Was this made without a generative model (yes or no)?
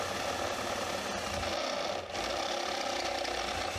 yes